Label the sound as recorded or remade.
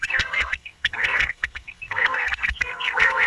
remade